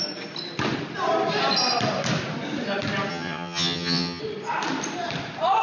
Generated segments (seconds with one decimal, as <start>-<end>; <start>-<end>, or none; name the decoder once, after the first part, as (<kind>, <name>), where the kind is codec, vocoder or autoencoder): 3.1-4.2 (vocoder, HiFi-GAN)